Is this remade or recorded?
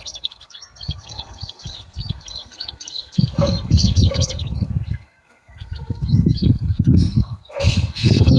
remade